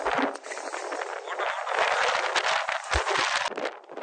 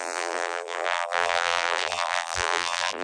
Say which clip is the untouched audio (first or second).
first